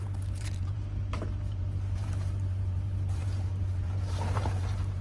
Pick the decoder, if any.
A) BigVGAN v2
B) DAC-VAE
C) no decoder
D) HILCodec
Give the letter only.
A